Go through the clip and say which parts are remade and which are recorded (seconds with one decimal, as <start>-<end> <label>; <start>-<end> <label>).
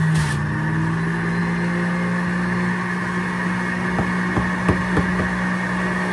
0.0-6.1 recorded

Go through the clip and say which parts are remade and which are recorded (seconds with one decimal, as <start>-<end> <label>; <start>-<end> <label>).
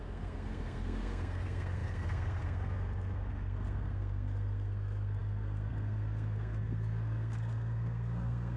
0.0-8.6 remade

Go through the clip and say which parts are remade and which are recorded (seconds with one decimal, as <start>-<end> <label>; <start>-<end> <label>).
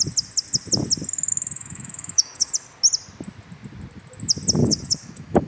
0.0-1.3 recorded; 1.3-2.5 remade; 2.5-4.6 recorded; 4.6-5.5 remade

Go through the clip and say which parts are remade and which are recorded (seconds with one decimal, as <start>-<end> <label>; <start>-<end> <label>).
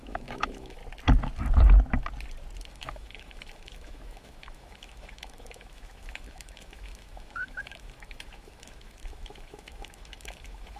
0.0-0.8 remade; 0.8-2.7 recorded; 2.7-10.8 remade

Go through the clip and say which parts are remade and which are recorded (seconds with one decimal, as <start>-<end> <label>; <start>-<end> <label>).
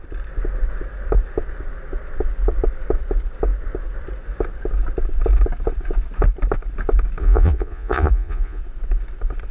0.0-7.2 recorded; 7.2-8.6 remade; 8.6-9.5 recorded